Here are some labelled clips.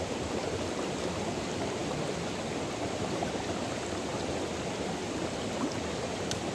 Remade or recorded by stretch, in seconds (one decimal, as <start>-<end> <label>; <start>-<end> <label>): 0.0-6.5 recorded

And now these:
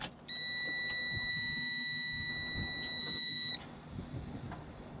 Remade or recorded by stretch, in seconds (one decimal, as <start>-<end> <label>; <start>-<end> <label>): 0.0-1.3 recorded; 1.3-2.3 remade; 2.3-3.0 recorded; 3.0-3.5 remade; 3.5-5.0 recorded

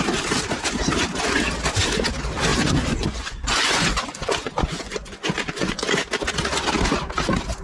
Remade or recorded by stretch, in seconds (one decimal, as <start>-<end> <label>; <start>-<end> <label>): 0.0-2.5 recorded; 2.5-5.9 remade; 5.9-7.6 recorded

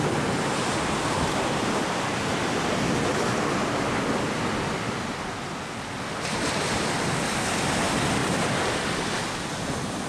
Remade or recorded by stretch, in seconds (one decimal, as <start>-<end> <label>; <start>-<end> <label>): 0.0-10.1 recorded

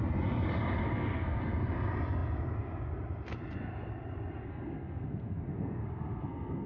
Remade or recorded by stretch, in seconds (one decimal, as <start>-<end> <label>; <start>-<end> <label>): 0.0-0.8 recorded; 0.8-1.4 remade; 1.4-4.5 recorded; 4.5-6.7 remade

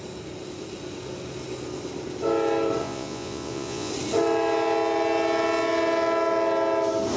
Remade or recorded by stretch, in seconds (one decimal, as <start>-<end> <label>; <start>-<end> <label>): 0.0-2.8 recorded; 2.8-3.9 remade; 3.9-7.2 recorded

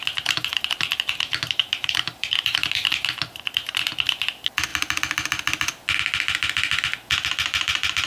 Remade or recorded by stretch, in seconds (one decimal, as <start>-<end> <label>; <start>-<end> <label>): 0.0-0.5 recorded; 0.5-1.1 remade; 1.1-1.6 recorded; 1.6-3.7 remade; 3.7-8.1 recorded

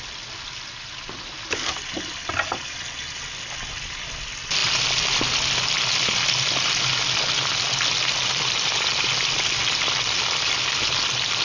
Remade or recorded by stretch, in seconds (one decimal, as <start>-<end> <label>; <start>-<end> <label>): 0.0-11.4 recorded